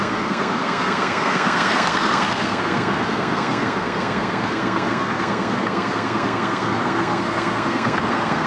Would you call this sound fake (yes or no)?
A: yes